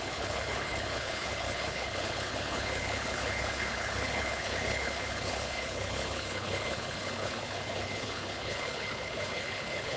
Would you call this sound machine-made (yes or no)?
yes